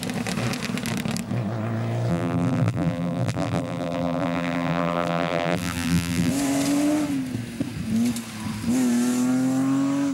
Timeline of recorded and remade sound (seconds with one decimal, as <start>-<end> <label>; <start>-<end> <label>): 0.0-2.1 recorded; 2.1-6.3 remade; 6.3-10.1 recorded